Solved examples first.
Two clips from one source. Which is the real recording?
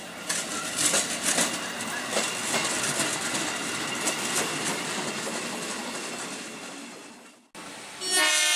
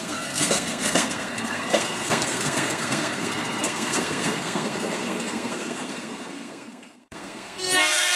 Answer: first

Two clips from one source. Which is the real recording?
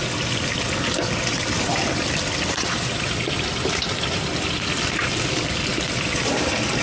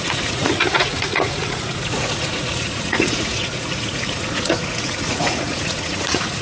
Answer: first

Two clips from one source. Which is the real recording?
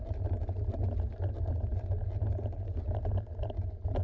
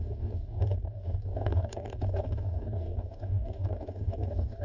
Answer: first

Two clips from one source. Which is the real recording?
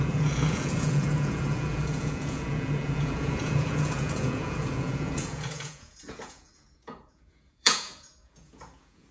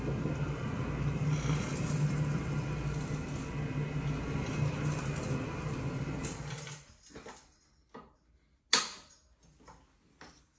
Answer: second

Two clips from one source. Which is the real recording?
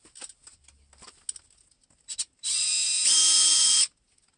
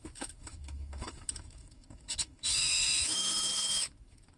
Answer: first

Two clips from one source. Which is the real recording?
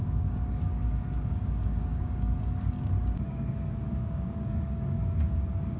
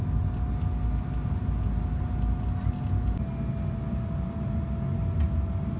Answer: second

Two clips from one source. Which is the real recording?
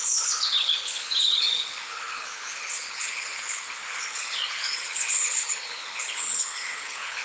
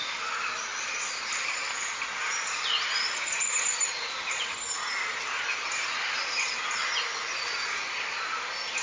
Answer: second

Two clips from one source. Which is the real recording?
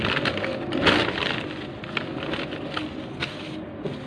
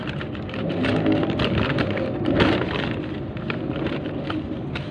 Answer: first